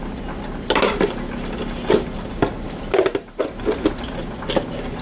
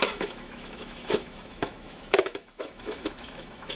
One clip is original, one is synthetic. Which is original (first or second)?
first